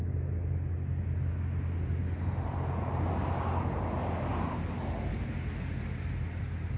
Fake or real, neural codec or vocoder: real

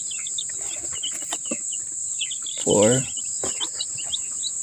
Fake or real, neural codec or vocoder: real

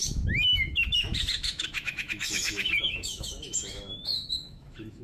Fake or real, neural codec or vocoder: fake, autoencoder, DAC-VAE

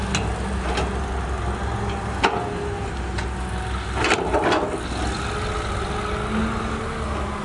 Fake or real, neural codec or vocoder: real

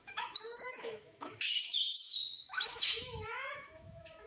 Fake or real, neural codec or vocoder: fake, autoencoder, DAC-VAE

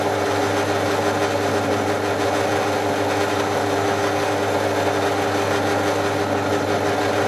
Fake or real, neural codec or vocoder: real